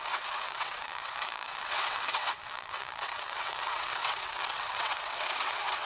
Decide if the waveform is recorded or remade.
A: remade